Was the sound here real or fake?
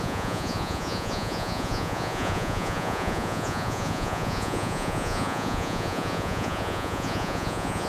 fake